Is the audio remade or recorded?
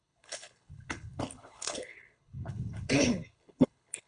remade